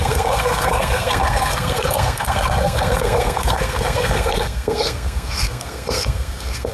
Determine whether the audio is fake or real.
fake